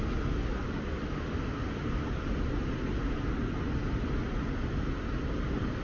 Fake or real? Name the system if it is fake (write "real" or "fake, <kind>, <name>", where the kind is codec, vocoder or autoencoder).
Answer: real